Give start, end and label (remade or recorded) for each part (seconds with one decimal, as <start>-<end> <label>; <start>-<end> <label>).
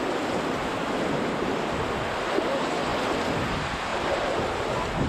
0.0-3.9 recorded; 3.9-4.6 remade; 4.6-5.1 recorded